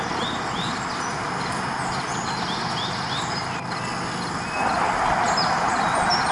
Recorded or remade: recorded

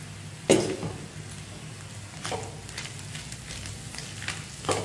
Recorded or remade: recorded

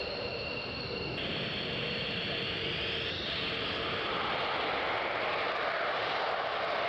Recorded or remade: recorded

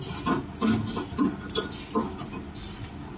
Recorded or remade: recorded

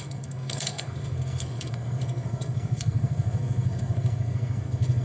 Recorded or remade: remade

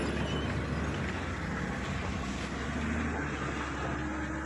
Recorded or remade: recorded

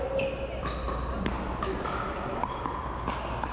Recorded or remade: recorded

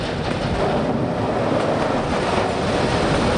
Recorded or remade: recorded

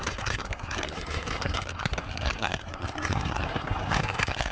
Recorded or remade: remade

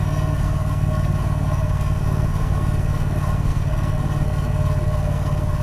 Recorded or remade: remade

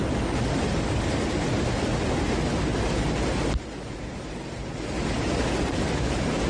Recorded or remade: recorded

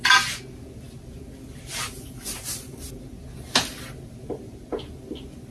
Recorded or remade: recorded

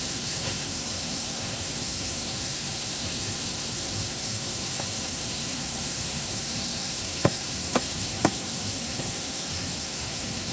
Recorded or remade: remade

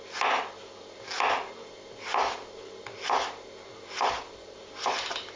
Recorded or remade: recorded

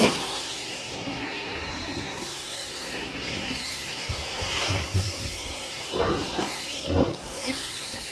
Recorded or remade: remade